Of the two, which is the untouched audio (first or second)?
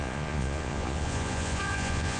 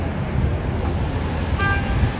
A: second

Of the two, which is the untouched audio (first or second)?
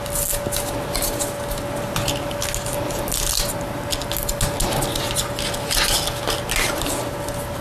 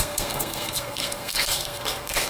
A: first